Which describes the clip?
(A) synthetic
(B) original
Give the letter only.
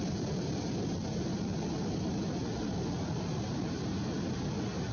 B